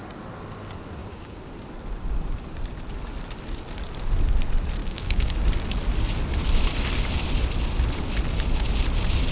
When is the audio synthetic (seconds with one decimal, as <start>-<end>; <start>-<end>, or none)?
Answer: 1.0-1.5; 4.8-5.4

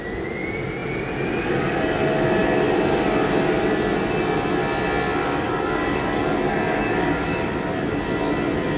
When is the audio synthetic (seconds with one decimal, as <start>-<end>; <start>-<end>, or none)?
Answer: 5.2-7.5

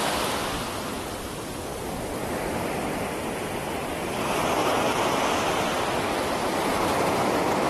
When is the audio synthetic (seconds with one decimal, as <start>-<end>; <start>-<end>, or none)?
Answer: none

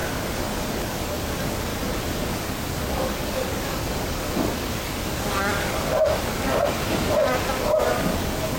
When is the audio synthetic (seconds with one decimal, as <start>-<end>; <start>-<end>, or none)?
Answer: 0.0-1.7; 2.2-8.6

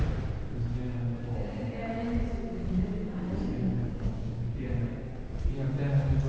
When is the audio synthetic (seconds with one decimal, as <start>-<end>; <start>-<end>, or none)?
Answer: 3.7-4.5

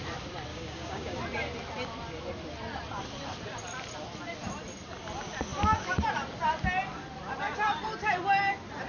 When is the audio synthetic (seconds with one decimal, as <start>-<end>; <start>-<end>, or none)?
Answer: 0.5-1.2

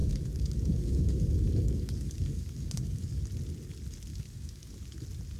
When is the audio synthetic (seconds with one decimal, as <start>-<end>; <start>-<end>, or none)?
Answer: 0.0-3.2; 4.1-4.7

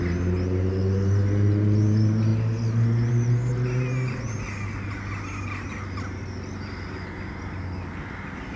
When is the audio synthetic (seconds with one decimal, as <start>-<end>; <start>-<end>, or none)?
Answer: none